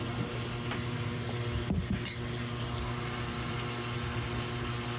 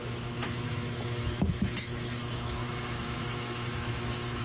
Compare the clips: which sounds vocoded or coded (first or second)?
second